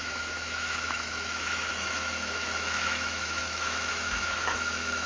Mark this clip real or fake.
fake